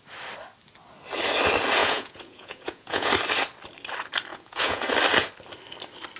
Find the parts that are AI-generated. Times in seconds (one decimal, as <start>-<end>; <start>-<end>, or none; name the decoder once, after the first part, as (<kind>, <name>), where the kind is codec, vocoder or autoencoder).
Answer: 1.8-3.1 (vocoder, Vocos); 4.3-4.8